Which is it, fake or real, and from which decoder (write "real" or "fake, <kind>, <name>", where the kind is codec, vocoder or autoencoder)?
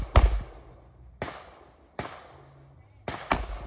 real